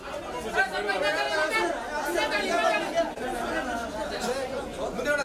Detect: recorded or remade recorded